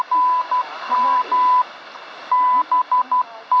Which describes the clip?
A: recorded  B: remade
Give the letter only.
A